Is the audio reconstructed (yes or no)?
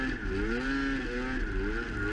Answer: no